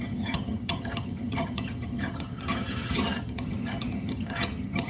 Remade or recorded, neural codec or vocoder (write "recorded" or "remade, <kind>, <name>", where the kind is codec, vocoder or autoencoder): remade, vocoder, HiFi-GAN